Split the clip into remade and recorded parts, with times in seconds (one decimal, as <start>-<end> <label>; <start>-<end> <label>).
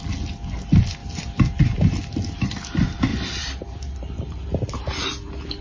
0.0-1.0 recorded; 1.0-1.6 remade; 1.6-3.1 recorded; 3.1-5.1 remade; 5.1-5.6 recorded